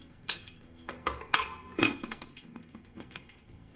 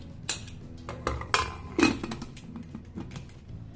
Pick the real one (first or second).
second